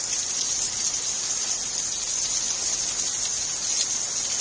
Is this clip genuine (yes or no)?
yes